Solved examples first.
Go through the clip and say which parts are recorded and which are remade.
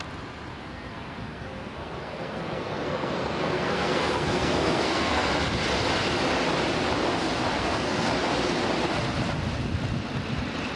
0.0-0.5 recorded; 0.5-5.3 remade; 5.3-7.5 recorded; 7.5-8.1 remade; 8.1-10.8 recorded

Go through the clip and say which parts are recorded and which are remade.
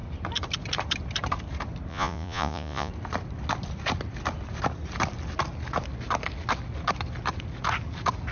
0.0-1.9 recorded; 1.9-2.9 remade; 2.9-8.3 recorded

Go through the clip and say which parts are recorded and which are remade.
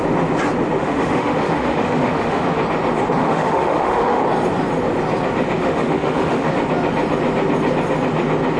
0.0-0.8 recorded; 0.8-2.6 remade; 2.6-3.2 recorded; 3.2-4.2 remade; 4.2-5.6 recorded; 5.6-6.5 remade; 6.5-8.6 recorded